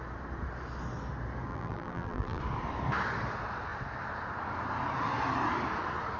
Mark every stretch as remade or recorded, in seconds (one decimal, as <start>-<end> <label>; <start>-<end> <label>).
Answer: 0.0-1.5 recorded; 1.5-2.4 remade; 2.4-6.2 recorded